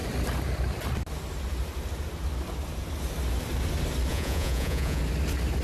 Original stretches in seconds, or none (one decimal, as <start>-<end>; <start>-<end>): 0.0-4.1; 5.0-5.6